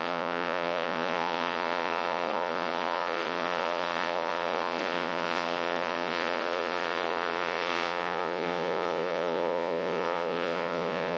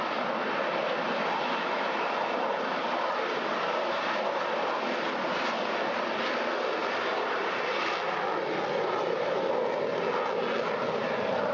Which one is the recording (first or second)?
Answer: second